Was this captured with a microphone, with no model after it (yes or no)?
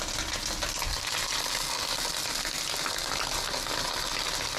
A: yes